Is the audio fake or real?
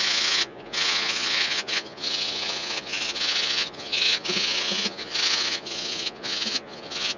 fake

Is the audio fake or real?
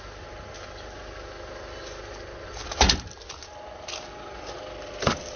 real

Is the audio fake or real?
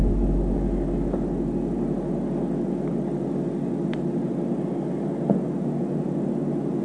real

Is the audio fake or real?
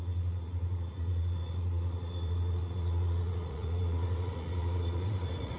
fake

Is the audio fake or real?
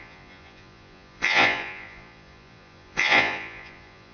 fake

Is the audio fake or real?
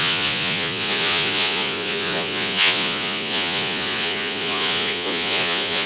fake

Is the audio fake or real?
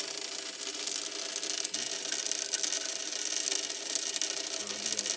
real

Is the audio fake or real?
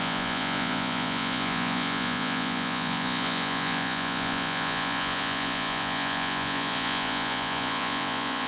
fake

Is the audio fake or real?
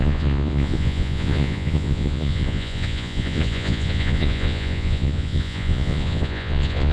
fake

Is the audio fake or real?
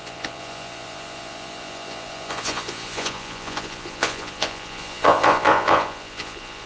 fake